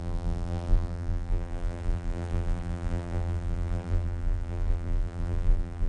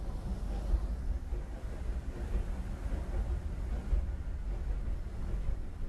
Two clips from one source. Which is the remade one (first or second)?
first